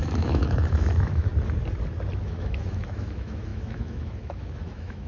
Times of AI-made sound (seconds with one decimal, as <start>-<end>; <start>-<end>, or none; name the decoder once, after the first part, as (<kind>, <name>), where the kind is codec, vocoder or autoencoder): 0.0-1.3 (autoencoder, DAC-VAE); 2.2-5.1